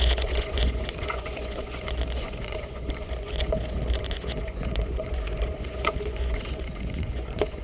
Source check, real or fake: fake